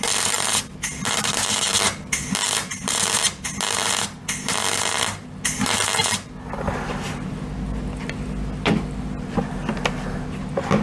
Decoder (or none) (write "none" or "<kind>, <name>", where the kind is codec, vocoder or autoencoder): none